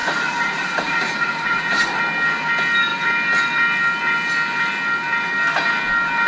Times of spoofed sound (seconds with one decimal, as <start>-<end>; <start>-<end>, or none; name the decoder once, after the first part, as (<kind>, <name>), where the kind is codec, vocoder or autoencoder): 0.0-2.0 (vocoder, Vocos)